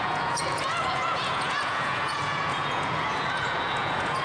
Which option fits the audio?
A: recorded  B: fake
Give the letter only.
B